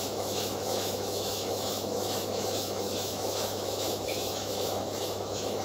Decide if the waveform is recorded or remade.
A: remade